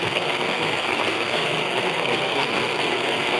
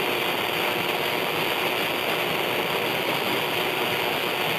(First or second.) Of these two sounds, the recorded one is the second